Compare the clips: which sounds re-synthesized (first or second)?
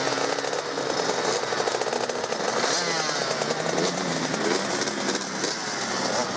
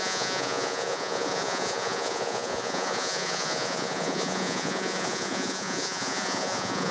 second